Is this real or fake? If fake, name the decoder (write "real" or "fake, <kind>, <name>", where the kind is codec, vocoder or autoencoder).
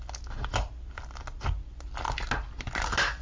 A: real